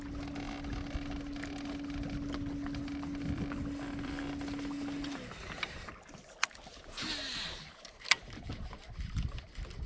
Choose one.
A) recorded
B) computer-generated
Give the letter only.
A